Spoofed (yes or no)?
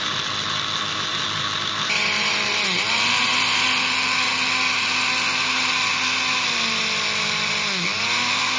no